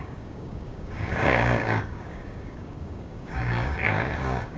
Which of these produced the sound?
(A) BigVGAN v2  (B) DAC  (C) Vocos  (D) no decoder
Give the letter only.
B